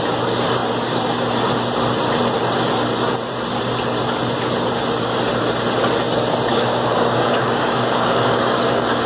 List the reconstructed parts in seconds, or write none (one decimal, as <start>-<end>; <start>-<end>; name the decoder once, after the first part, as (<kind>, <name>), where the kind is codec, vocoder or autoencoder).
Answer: 6.5-9.1 (codec, DAC)